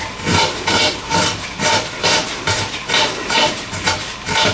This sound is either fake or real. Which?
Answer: fake